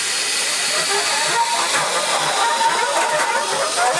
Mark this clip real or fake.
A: real